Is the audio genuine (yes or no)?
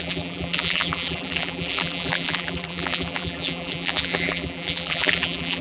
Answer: no